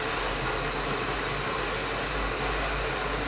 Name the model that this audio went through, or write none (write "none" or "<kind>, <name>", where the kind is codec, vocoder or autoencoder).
none